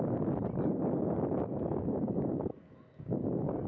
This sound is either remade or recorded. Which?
recorded